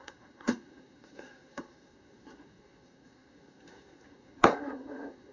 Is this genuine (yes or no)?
no